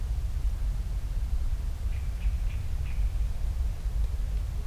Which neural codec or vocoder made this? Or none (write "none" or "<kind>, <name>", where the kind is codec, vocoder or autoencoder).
none